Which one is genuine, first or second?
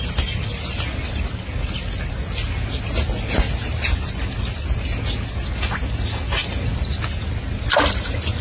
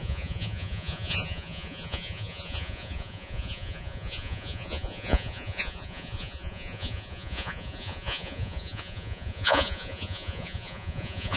first